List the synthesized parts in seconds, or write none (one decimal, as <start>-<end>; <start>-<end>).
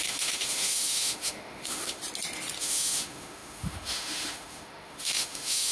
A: 0.0-2.0; 2.6-5.7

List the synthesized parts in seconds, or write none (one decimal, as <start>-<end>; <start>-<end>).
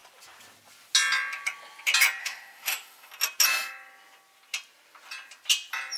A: 2.2-3.1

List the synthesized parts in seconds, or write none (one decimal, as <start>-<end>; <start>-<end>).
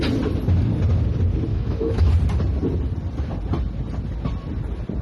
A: 1.5-2.1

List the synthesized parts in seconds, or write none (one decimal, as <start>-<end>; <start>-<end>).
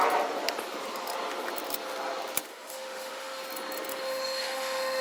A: 2.5-3.4; 3.9-5.0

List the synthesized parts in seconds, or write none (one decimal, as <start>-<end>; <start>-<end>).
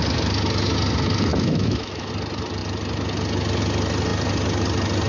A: 1.3-2.1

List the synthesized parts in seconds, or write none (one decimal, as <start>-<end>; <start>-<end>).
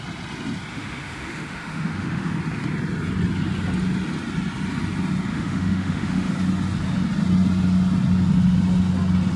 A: 0.7-2.4; 5.3-6.3